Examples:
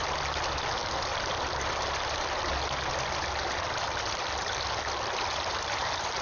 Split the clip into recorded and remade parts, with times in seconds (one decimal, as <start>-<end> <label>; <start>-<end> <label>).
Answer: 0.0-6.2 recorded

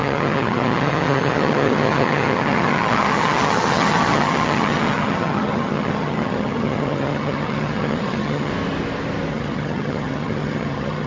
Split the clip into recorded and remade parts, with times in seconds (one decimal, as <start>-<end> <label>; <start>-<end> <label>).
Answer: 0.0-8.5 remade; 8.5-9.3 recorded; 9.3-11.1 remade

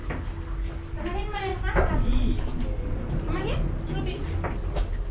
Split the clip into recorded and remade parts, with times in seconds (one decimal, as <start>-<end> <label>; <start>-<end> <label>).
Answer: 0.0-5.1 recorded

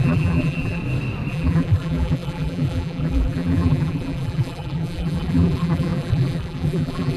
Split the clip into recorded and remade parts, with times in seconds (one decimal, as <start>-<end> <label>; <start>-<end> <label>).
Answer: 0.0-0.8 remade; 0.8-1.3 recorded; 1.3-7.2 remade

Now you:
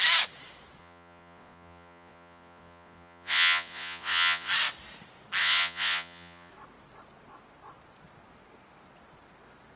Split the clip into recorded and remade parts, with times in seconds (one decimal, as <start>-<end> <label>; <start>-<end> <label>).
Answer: 0.0-0.8 recorded; 0.8-4.5 remade; 4.5-5.4 recorded; 5.4-6.5 remade; 6.5-9.8 recorded